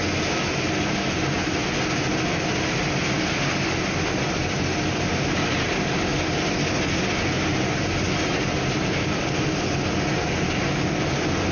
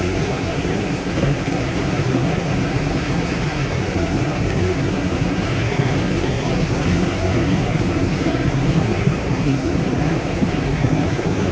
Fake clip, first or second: second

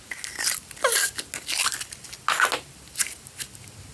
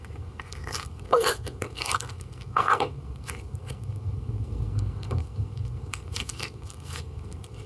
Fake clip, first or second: second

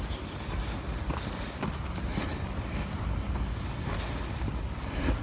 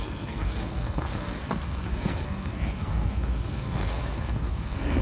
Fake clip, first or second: second